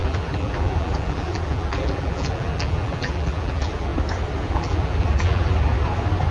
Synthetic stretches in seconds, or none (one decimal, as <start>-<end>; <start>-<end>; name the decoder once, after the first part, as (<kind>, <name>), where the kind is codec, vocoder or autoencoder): 0.0-3.9 (vocoder, BigVGAN v2); 4.5-5.7